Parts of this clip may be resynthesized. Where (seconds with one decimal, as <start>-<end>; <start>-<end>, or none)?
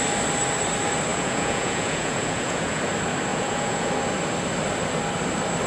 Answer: 1.1-2.8; 3.3-3.9